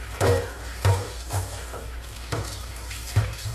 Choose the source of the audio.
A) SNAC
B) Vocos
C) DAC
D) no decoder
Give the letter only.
C